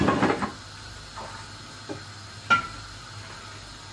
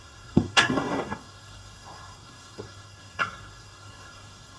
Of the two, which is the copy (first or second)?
second